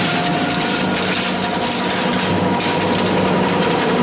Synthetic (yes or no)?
no